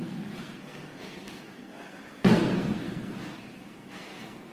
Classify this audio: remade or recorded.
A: remade